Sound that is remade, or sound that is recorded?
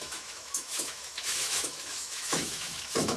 remade